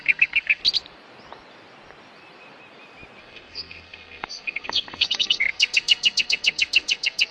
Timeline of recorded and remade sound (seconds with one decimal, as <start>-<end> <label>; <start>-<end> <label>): 0.0-0.6 remade; 0.6-3.2 recorded; 3.2-7.3 remade